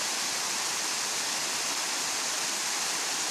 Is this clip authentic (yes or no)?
yes